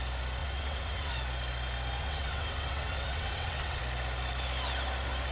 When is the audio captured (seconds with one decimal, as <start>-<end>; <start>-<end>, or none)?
0.0-0.4; 1.1-2.0; 3.8-5.3